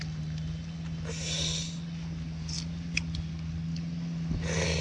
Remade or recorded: recorded